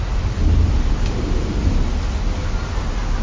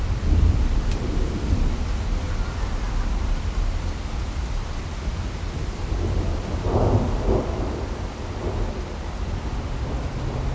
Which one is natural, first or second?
first